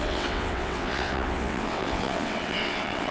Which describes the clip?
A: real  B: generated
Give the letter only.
B